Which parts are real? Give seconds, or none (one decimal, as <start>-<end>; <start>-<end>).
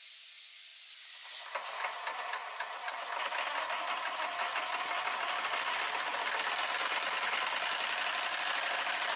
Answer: 0.0-9.2